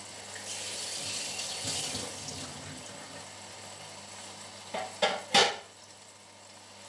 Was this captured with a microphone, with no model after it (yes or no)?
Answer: yes